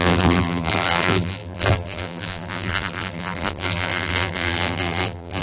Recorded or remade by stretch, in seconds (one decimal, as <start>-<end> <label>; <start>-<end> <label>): 0.0-5.4 remade